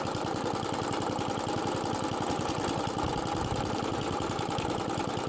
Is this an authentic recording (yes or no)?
yes